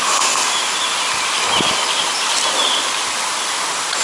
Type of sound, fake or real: real